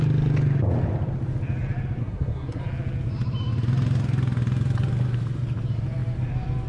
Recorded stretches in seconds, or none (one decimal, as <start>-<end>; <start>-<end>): 0.0-2.0; 2.6-6.7